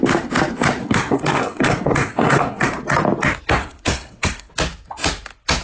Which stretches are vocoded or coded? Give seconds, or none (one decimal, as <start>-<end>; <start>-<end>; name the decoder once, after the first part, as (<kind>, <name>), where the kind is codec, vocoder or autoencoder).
0.8-2.7 (codec, SNAC); 3.6-4.5